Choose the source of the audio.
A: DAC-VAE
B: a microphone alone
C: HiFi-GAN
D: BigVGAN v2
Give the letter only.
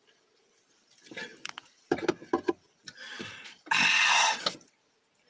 B